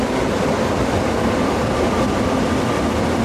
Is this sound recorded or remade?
remade